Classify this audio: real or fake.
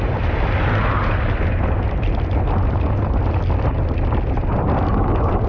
real